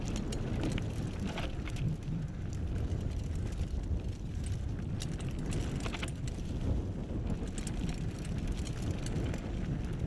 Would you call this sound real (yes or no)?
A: yes